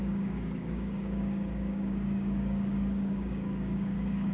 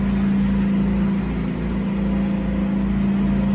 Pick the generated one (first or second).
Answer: first